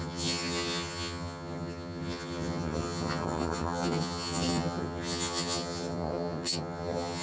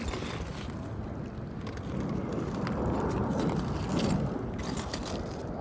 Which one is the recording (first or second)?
second